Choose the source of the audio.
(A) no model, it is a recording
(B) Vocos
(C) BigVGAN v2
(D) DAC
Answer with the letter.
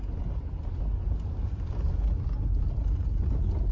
A